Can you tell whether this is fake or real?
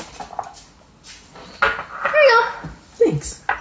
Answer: real